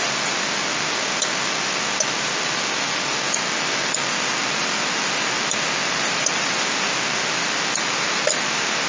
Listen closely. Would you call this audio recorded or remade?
recorded